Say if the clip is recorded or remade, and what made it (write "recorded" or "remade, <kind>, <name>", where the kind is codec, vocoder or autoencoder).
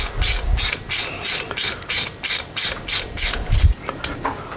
recorded